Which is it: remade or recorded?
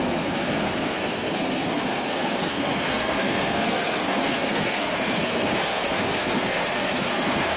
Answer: remade